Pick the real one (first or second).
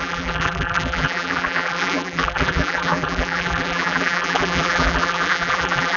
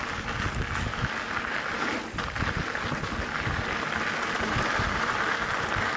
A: second